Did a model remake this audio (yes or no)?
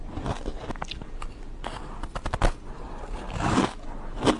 no